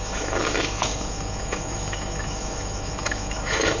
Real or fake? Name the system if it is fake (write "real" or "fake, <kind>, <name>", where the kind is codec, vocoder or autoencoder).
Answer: fake, autoencoder, DAC-VAE